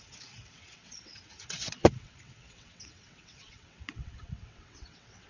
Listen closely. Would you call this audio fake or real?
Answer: fake